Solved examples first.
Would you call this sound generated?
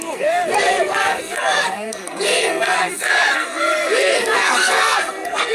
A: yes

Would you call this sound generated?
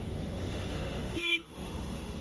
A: yes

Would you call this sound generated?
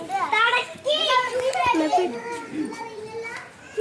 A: no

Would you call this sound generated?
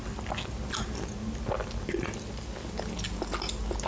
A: no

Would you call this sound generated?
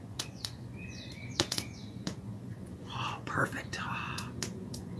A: yes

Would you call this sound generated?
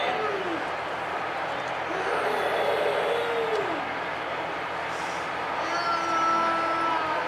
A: no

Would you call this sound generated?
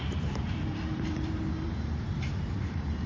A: yes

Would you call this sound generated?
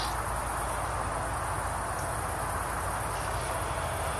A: no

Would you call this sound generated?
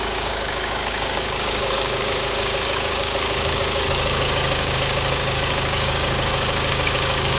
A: yes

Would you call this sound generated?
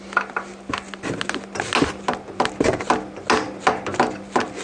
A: no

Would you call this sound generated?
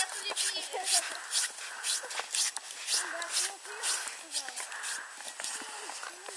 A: no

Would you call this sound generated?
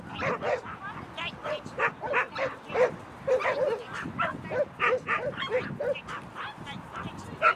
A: no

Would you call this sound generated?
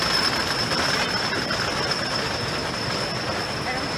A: no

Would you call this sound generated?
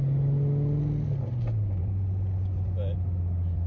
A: no